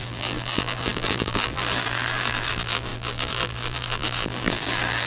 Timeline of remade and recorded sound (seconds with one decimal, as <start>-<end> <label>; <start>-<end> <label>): 0.0-5.1 remade